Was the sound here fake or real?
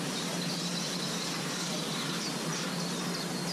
real